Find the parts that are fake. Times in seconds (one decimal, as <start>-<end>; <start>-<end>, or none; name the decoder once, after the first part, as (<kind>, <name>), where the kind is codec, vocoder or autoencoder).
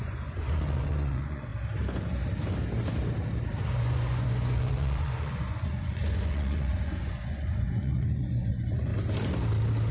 0.0-1.5 (vocoder, Vocos); 3.8-8.9